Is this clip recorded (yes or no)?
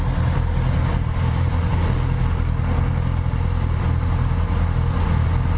yes